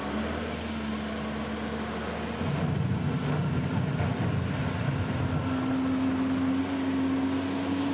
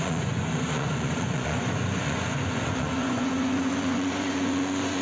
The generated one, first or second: second